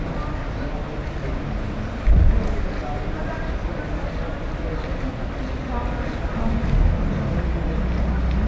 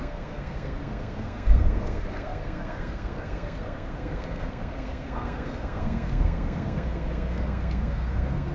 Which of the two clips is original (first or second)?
first